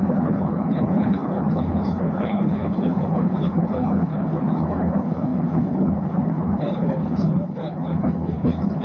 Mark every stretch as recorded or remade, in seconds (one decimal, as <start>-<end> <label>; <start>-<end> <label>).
0.0-8.8 remade